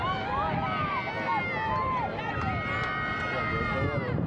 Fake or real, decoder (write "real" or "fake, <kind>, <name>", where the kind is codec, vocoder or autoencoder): real